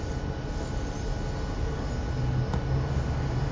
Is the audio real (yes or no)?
yes